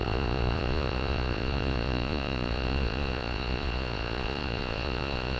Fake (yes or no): yes